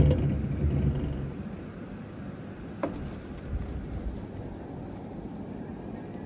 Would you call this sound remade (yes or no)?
no